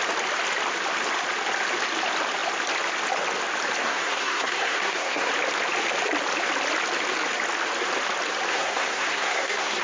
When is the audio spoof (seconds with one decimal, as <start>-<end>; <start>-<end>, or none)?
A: 3.8-5.3; 8.5-9.8